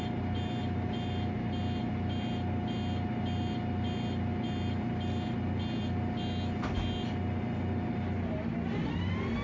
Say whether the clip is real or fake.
real